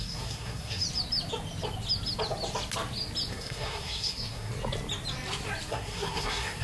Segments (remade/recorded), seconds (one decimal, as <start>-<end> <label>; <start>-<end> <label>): 0.0-0.8 remade; 0.8-3.3 recorded; 3.3-4.5 remade; 4.5-5.7 recorded; 5.7-6.6 remade